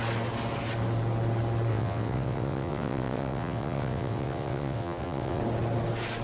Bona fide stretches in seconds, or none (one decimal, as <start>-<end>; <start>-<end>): 0.0-1.7; 5.4-6.2